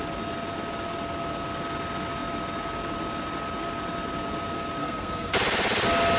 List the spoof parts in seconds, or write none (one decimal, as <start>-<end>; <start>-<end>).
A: 4.8-5.3

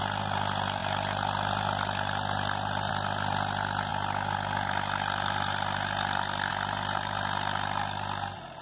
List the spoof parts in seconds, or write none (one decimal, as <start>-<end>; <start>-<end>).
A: none

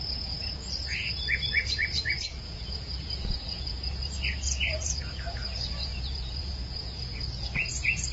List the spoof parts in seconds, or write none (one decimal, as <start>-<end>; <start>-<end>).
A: 0.0-8.1

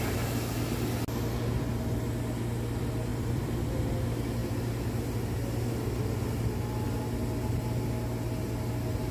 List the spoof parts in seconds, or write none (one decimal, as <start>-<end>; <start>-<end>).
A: 3.1-3.9

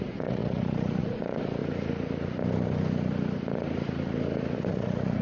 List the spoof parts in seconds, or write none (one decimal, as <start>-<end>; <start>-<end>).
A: 0.0-1.6; 4.7-5.2

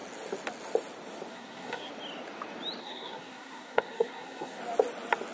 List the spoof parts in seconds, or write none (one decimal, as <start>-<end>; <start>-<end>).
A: 1.3-1.9; 2.8-4.6

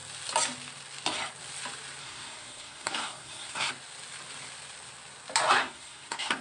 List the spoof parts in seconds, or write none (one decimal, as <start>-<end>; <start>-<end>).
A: 2.0-3.7; 5.6-6.4

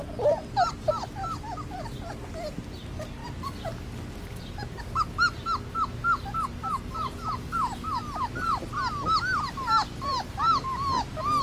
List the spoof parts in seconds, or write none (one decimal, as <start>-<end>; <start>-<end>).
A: none